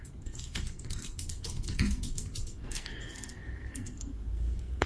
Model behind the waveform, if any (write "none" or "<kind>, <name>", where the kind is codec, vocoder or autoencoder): codec, SNAC